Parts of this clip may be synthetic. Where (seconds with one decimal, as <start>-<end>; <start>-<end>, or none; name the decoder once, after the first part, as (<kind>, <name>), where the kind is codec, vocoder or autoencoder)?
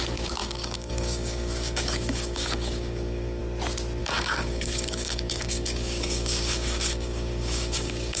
0.0-3.4 (codec, DAC); 4.0-8.2